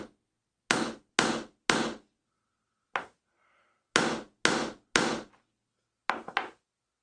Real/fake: real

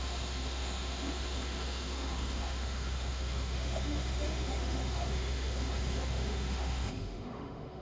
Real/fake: fake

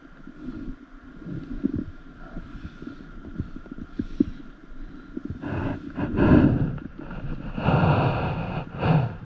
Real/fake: real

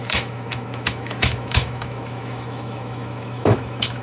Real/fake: fake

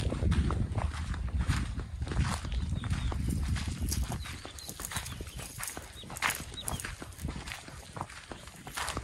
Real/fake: real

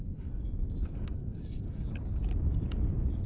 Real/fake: real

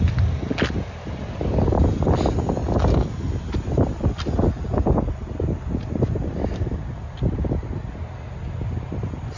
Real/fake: real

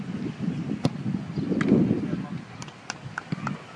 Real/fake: real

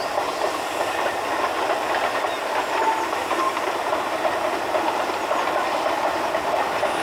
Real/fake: real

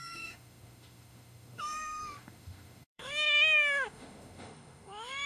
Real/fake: fake